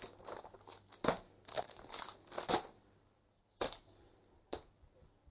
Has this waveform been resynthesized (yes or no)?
no